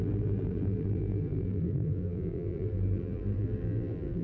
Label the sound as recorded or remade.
remade